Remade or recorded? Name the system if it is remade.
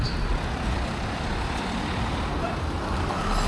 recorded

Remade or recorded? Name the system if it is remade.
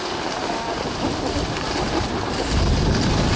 recorded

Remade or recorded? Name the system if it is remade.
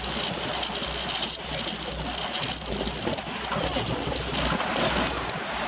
recorded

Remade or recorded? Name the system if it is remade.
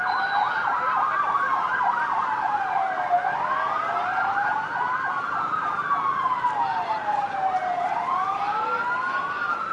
recorded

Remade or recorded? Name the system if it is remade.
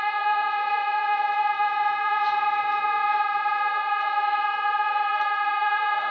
remade, vocoder, Vocos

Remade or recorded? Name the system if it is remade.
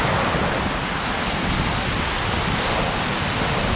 recorded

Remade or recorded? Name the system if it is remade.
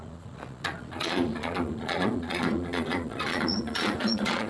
remade, vocoder, Vocos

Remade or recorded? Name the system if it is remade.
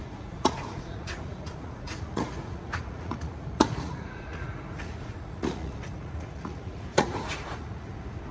remade, vocoder, Vocos